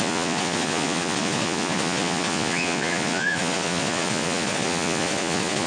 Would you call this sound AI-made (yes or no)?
yes